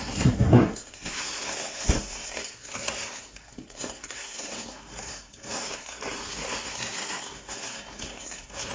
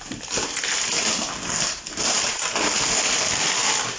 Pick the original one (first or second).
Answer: second